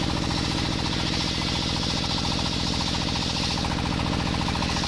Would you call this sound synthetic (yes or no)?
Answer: no